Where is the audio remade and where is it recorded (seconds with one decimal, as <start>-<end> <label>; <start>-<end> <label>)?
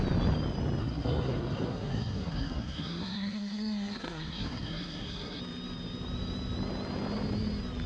0.0-0.8 recorded; 0.8-5.4 remade; 5.4-7.9 recorded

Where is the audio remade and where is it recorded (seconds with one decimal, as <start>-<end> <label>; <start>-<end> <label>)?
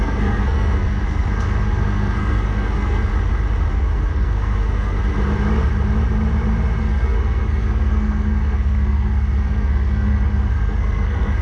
0.0-3.1 remade; 3.1-3.7 recorded; 3.7-5.0 remade; 5.0-6.8 recorded; 6.8-11.4 remade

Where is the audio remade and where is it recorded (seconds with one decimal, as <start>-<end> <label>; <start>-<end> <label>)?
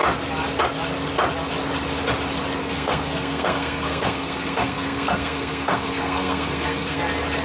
0.0-2.6 recorded; 2.6-7.0 remade; 7.0-7.4 recorded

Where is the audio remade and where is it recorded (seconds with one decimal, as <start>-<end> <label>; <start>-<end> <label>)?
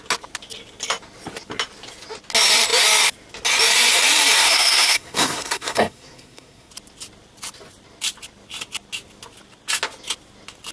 0.0-4.4 recorded; 4.4-6.7 remade; 6.7-10.7 recorded